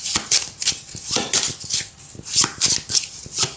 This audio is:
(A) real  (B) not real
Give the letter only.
A